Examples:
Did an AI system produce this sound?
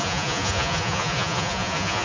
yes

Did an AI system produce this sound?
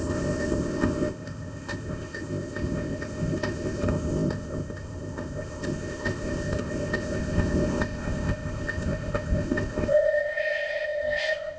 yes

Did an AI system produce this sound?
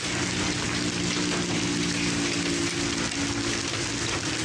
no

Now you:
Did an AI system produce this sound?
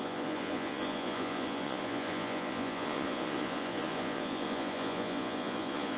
yes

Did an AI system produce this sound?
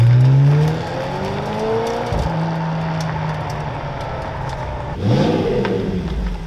no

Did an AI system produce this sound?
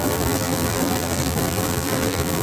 yes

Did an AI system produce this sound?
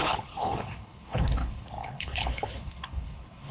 yes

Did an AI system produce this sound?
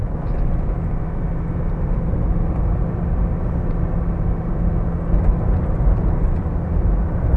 no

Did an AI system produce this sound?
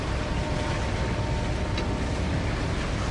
no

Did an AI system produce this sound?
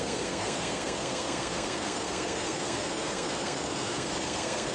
yes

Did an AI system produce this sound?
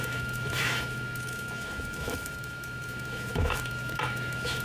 yes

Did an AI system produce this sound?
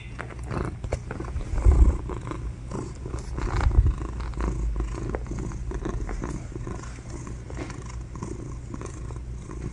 no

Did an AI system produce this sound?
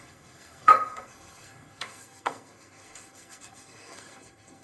yes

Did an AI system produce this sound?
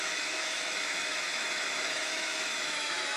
yes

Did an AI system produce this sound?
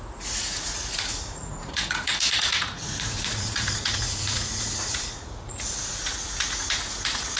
yes